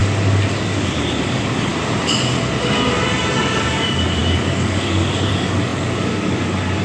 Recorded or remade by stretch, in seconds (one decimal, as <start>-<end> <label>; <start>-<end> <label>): 0.0-0.5 recorded; 0.5-1.7 remade; 1.7-3.4 recorded; 3.4-6.8 remade